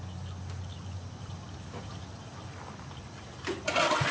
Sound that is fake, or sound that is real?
real